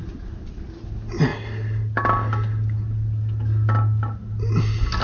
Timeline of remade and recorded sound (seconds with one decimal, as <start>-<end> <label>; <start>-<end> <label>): 0.0-5.0 recorded